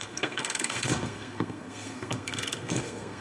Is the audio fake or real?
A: fake